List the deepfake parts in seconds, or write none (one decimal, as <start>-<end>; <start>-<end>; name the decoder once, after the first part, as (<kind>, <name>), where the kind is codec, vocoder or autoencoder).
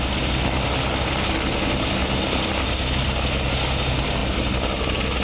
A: none